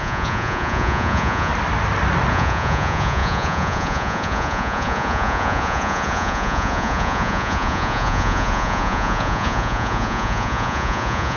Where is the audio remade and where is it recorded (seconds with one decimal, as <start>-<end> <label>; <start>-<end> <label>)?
0.0-1.5 remade; 1.5-2.3 recorded; 2.3-11.4 remade